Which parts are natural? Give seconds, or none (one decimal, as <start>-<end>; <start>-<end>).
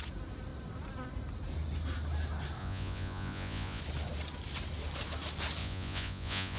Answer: 0.0-2.6; 3.8-5.6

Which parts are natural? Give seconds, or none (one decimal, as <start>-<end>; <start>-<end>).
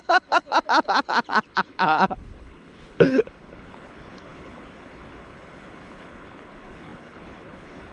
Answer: none